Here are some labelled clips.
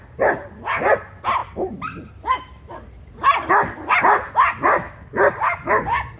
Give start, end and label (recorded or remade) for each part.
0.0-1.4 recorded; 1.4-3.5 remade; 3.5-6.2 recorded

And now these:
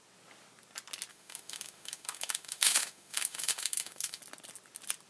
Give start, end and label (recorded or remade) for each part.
0.0-1.1 recorded; 1.1-4.2 remade; 4.2-5.1 recorded

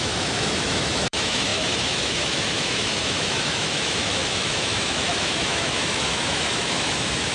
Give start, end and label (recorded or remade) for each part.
0.0-7.3 remade

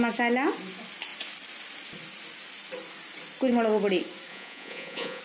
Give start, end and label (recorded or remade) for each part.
0.0-4.3 recorded; 4.3-5.2 remade